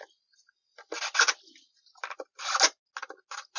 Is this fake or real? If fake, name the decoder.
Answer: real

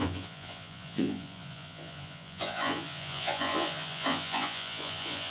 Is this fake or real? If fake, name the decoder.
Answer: fake, vocoder, Vocos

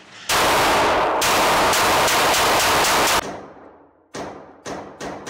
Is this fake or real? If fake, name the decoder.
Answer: real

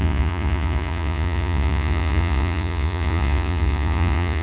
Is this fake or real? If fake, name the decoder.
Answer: fake, vocoder, Vocos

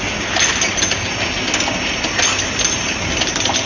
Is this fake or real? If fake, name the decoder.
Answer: real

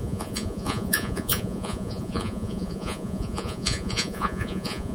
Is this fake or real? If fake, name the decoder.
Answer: fake, vocoder, Vocos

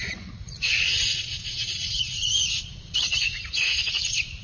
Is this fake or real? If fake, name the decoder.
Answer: fake, vocoder, Vocos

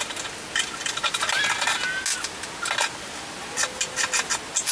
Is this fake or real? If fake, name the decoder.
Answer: real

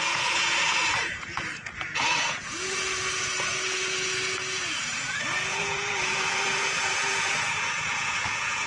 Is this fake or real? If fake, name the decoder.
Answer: fake, vocoder, Vocos